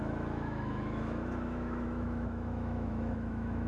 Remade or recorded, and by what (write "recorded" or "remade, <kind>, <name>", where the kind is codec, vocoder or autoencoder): remade, autoencoder, DAC-VAE